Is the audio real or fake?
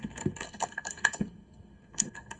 fake